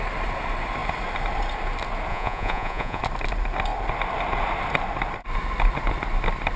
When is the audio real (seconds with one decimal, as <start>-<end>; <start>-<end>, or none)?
0.0-2.1; 3.0-6.6